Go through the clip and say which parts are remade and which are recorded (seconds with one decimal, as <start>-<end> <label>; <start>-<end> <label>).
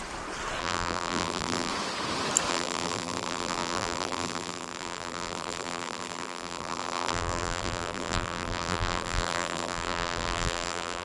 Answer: 0.0-0.6 recorded; 0.6-1.7 remade; 1.7-2.5 recorded; 2.5-11.0 remade